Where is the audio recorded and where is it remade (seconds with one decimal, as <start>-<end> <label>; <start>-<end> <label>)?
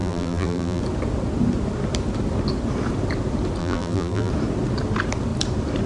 0.0-0.8 remade; 0.8-3.6 recorded; 3.6-4.3 remade; 4.3-5.9 recorded